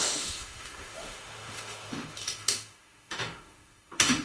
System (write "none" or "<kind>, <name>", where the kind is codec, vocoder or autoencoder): autoencoder, DAC-VAE